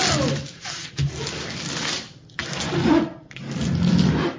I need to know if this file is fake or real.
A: real